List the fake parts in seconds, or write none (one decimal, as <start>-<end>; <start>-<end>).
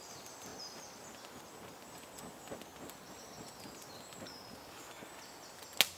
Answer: none